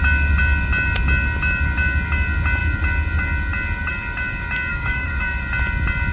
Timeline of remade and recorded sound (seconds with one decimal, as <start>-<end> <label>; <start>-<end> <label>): 0.0-4.7 recorded; 4.7-5.4 remade; 5.4-6.1 recorded